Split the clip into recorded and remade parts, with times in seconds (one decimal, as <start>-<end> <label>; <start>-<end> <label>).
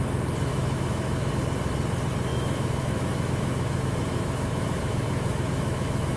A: 0.0-0.5 recorded; 0.5-1.3 remade; 1.3-2.3 recorded; 2.3-6.2 remade